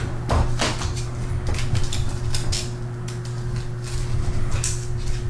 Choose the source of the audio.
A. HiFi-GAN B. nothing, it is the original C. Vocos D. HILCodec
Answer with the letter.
B